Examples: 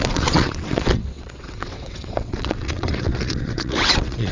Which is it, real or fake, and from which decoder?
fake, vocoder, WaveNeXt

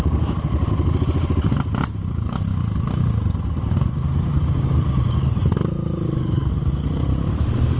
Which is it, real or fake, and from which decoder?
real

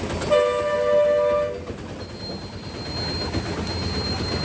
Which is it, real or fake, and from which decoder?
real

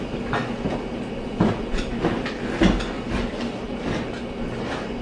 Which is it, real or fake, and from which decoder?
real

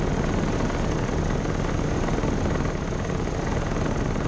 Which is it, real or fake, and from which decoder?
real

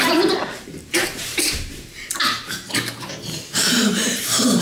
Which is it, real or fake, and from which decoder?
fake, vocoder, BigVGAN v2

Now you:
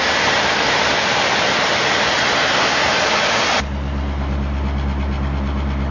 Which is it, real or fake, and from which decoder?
real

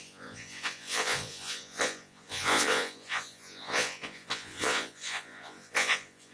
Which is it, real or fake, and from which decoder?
fake, vocoder, Vocos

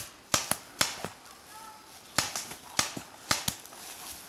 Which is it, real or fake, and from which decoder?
real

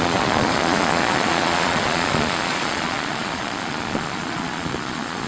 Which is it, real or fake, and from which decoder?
fake, vocoder, Vocos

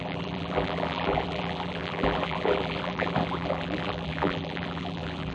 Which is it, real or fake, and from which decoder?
fake, vocoder, BigVGAN v2